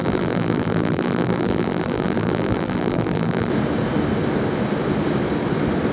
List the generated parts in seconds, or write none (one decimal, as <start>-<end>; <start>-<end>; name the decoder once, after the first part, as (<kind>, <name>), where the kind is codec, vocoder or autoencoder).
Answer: 0.0-3.5 (vocoder, BigVGAN v2)